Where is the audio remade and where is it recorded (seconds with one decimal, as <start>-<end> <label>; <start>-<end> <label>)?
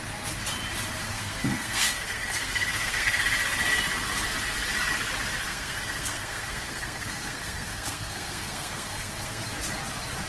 0.0-1.1 recorded; 1.1-3.2 remade; 3.2-5.5 recorded; 5.5-9.4 remade; 9.4-10.3 recorded